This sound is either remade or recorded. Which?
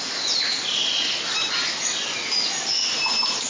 recorded